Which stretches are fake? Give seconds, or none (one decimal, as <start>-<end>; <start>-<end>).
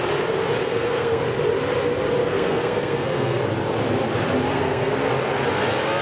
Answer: 0.6-1.2; 2.2-3.4; 4.5-5.1